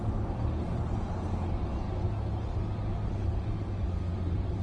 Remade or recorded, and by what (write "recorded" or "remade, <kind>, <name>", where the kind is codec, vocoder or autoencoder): recorded